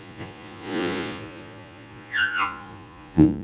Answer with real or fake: fake